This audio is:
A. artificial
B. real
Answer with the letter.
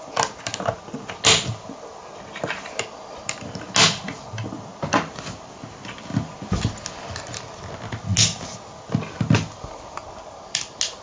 B